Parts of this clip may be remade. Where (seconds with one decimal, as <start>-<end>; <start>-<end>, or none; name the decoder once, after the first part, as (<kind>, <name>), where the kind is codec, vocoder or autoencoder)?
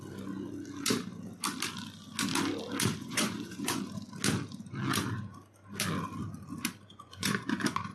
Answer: 3.0-3.8 (vocoder, Vocos); 6.9-7.9